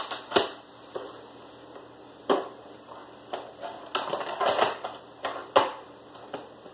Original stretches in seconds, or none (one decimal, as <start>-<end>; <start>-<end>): 0.0-6.7